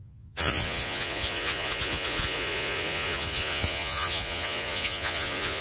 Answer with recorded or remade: remade